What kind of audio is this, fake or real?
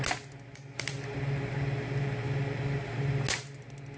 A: real